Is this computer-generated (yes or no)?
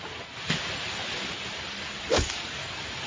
yes